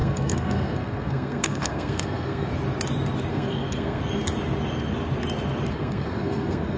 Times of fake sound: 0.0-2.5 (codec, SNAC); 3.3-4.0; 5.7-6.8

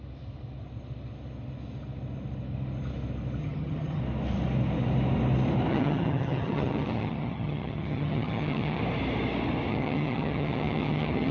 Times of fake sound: 3.4-4.0 (vocoder, HiFi-GAN); 5.7-8.8; 9.7-11.3

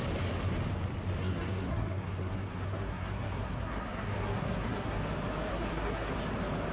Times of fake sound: 1.2-5.0 (codec, SNAC); 5.5-6.1

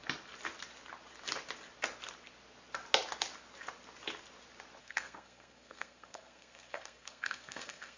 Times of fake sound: 4.8-8.0 (codec, SNAC)

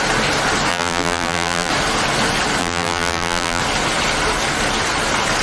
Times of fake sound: 0.7-1.7 (vocoder, BigVGAN v2); 2.6-3.6